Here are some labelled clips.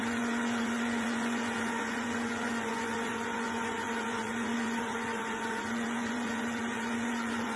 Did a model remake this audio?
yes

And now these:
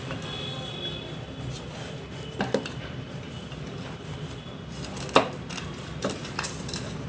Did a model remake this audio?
no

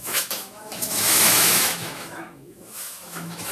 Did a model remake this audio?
yes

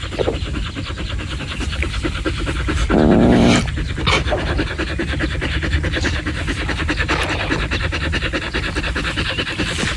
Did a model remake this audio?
no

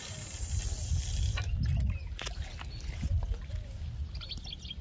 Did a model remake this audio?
no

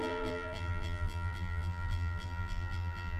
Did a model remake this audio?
yes